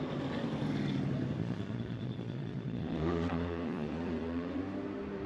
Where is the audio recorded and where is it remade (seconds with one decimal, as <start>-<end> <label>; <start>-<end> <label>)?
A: 0.0-1.4 recorded; 1.4-4.6 remade; 4.6-5.3 recorded